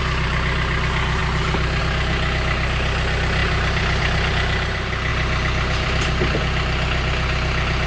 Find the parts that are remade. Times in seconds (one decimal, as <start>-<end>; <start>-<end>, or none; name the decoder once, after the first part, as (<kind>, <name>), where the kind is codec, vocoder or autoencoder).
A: 3.4-4.3 (vocoder, BigVGAN v2); 5.1-6.4